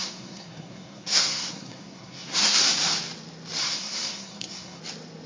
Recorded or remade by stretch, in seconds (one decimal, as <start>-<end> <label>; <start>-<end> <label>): 0.0-2.6 remade; 2.6-3.6 recorded; 3.6-4.8 remade; 4.8-5.3 recorded